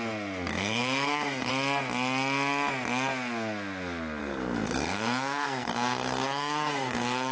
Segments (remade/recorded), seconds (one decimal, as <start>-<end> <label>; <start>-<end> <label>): 0.0-0.5 recorded; 0.5-1.5 remade; 1.5-4.2 recorded; 4.2-7.3 remade